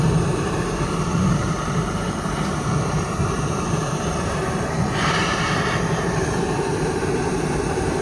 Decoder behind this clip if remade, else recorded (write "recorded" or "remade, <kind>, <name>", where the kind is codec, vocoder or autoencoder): remade, vocoder, BigVGAN v2